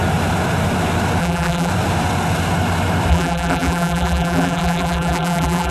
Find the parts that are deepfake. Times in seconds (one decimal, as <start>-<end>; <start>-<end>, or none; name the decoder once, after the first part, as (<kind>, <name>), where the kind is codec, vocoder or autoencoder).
1.2-1.7 (vocoder, BigVGAN v2); 3.1-5.7